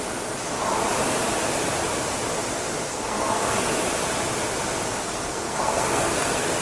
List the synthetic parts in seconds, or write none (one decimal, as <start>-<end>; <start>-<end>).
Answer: 2.9-3.7; 5.0-6.6